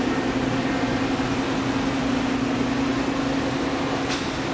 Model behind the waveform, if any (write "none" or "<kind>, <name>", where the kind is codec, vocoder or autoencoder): none